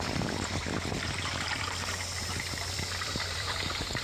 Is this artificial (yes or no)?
yes